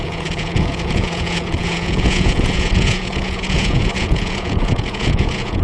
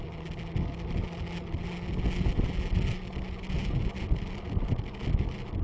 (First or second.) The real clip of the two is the second